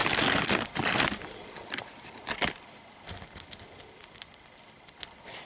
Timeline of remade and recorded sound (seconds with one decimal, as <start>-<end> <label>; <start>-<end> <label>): 0.0-5.5 recorded